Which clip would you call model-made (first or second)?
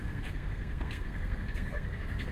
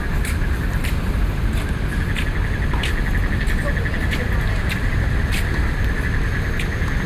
first